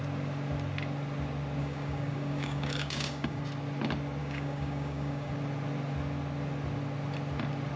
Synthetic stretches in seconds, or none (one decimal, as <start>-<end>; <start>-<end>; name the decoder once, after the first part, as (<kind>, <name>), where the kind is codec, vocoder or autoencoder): 1.6-3.4 (codec, DAC); 4.2-5.3